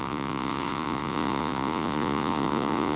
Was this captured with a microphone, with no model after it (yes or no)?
no